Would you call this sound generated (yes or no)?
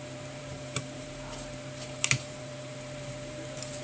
yes